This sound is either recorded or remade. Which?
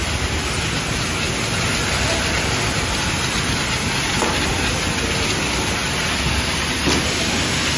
recorded